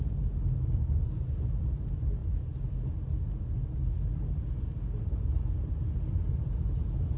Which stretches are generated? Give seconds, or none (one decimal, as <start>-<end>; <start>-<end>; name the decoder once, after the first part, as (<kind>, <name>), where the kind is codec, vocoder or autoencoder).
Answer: none